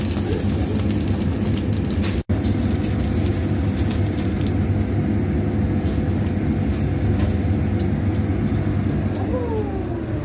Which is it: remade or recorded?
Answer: recorded